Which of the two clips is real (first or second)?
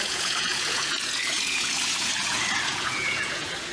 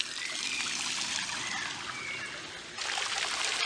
second